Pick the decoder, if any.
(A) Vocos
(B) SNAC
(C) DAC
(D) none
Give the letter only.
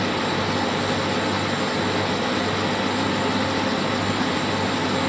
D